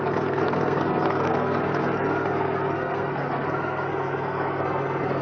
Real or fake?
fake